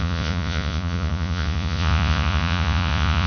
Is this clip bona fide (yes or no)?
no